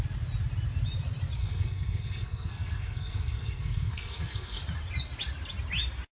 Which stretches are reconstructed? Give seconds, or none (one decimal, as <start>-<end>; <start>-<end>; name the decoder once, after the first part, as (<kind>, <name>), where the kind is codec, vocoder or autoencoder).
1.4-4.6 (codec, SNAC)